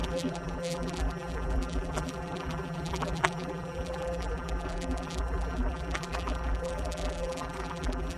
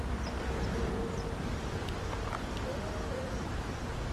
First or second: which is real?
second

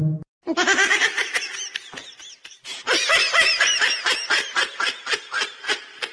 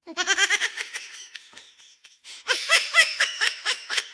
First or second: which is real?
first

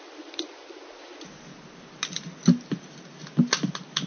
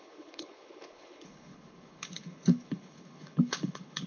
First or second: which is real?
first